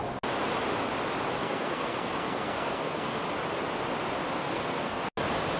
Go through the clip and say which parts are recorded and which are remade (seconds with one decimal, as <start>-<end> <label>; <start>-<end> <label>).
0.0-1.4 recorded; 1.4-3.2 remade; 3.2-4.4 recorded; 4.4-5.0 remade; 5.0-5.6 recorded